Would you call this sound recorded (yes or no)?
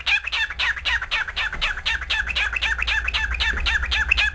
yes